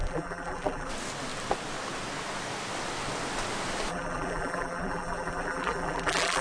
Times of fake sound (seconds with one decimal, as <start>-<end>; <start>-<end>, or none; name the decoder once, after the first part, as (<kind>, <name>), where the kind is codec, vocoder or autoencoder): 0.0-0.9 (vocoder, BigVGAN v2); 3.9-6.4